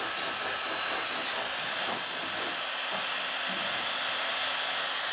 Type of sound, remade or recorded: recorded